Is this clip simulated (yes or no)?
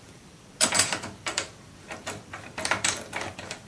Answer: yes